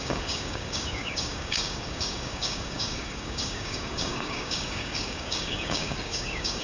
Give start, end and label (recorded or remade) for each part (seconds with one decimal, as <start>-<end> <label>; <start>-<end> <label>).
0.0-6.6 remade